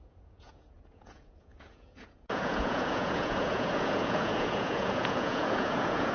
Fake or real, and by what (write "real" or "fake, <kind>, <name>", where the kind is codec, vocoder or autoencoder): fake, vocoder, Vocos